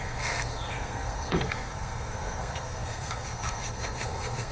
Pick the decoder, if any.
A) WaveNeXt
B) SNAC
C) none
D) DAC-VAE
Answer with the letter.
B